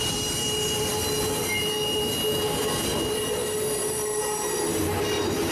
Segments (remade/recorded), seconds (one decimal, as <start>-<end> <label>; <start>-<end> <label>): 0.0-5.5 recorded